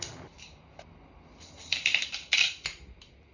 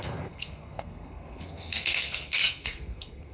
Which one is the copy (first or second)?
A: second